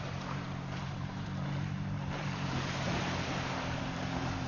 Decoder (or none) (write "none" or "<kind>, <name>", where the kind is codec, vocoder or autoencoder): vocoder, BigVGAN v2